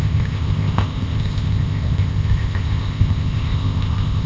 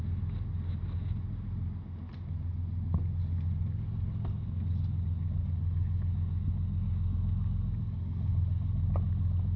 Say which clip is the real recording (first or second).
second